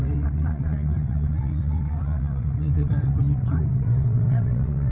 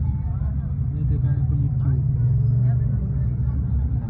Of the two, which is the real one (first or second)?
second